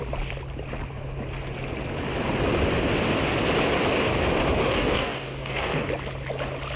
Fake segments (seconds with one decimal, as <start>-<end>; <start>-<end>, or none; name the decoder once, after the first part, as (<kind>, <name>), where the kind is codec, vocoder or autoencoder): 4.6-5.9 (codec, DAC)